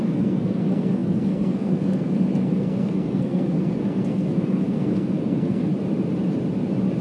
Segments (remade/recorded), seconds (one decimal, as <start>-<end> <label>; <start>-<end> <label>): 0.0-5.7 remade; 5.7-7.0 recorded